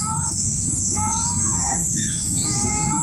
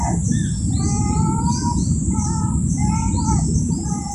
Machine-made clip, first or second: first